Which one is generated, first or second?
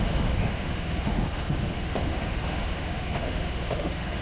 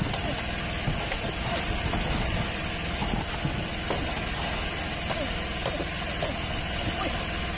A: first